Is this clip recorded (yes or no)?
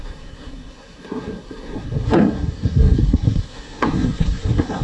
no